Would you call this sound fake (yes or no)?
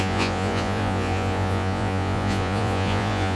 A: yes